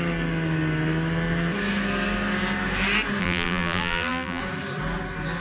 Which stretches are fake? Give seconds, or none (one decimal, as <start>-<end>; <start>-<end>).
3.2-4.4